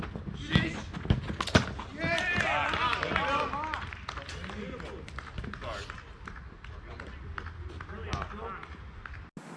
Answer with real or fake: real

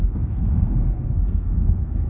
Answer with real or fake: fake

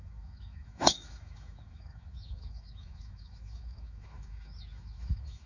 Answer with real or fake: fake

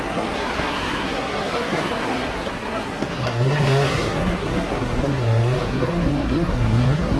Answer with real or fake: fake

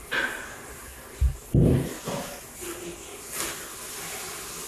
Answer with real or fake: real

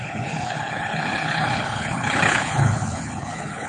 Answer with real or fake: fake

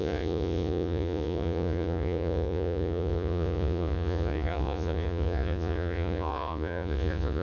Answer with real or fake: fake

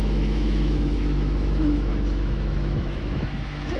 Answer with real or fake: fake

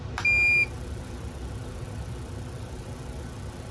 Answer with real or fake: real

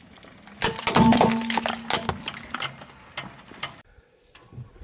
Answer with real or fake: real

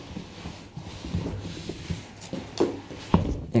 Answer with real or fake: real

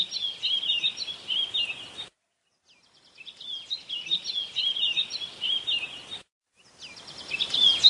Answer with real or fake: real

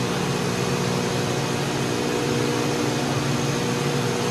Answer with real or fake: real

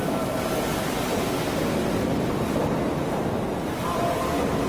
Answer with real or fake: real